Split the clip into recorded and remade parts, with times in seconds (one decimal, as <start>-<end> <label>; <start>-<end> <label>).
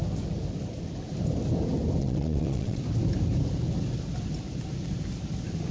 0.0-2.0 recorded; 2.0-2.8 remade; 2.8-5.7 recorded